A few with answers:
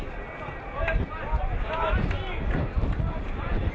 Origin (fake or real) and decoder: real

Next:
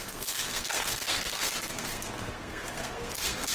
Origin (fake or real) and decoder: fake, codec, SNAC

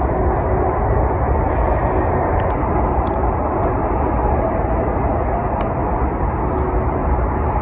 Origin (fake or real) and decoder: real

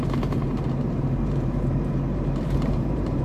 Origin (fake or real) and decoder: fake, vocoder, BigVGAN v2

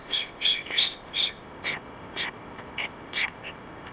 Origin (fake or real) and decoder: fake, codec, ZipCodec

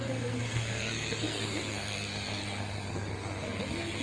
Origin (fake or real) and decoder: fake, codec, SNAC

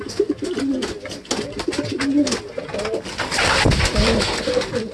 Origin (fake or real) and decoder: real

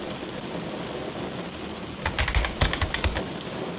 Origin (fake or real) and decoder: real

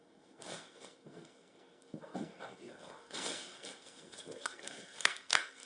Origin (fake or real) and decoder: fake, codec, SNAC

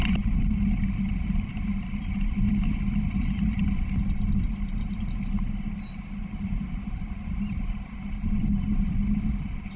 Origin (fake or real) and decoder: real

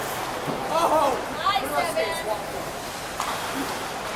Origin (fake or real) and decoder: real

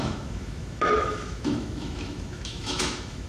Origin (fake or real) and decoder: fake, autoencoder, DAC-VAE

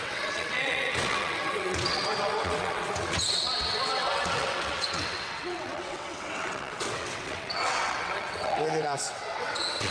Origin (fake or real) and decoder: fake, vocoder, WaveNeXt